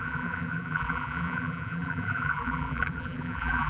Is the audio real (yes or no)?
no